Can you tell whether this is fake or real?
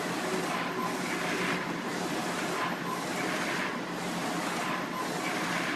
real